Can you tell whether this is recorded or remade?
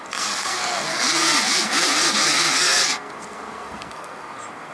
remade